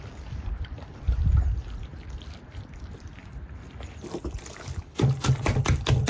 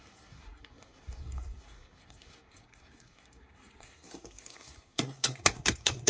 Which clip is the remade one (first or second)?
second